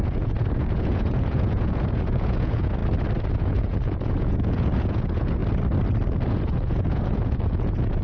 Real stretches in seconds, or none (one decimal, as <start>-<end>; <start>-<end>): 2.8-3.3; 5.4-6.3